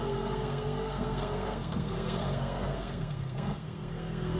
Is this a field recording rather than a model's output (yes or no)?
no